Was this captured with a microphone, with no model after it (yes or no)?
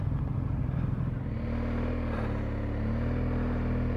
yes